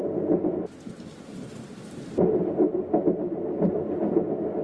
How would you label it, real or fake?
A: real